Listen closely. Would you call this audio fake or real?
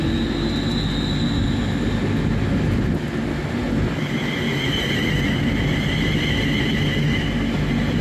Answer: real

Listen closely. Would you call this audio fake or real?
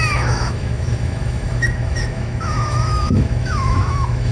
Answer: fake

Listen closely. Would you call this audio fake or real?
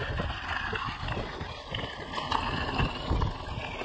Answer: real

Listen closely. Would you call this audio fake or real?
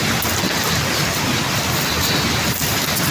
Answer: real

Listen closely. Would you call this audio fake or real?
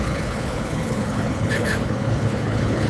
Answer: fake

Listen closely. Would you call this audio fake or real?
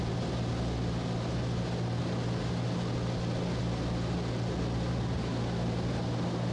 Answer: real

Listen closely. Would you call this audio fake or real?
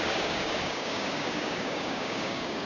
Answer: fake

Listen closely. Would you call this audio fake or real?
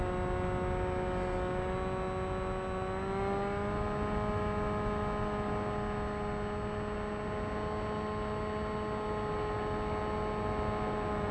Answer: real